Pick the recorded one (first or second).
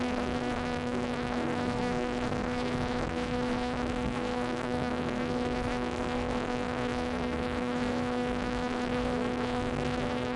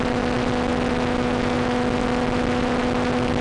second